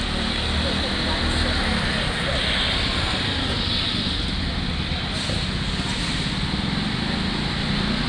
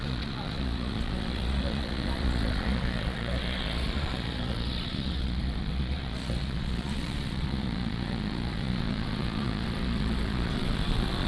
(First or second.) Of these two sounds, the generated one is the second